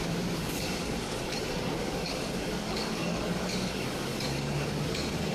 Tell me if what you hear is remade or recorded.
remade